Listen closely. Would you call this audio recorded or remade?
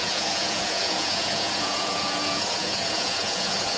remade